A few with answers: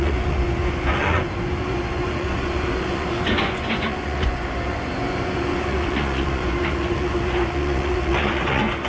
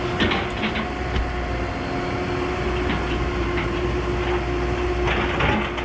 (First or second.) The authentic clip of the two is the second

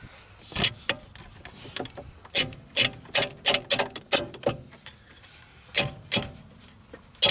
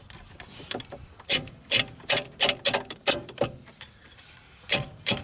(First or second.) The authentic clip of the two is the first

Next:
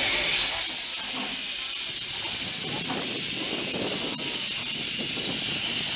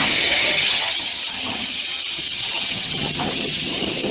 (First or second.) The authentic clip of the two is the first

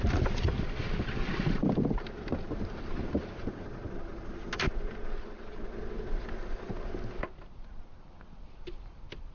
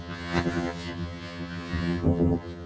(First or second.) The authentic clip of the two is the first